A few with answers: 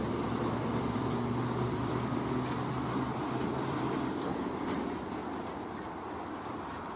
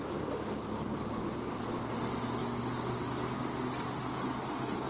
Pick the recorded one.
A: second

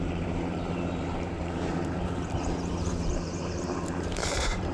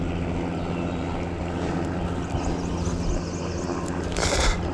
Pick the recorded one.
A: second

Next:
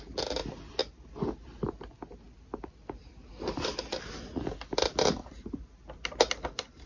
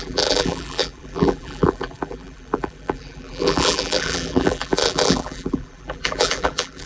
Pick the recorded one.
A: first